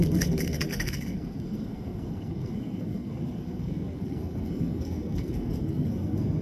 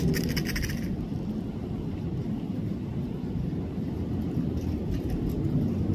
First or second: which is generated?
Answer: first